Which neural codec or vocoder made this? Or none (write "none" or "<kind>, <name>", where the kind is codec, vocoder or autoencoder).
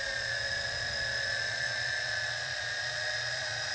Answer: vocoder, Vocos